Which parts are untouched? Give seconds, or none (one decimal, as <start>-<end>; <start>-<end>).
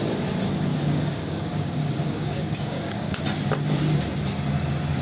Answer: 0.0-0.7; 3.2-5.0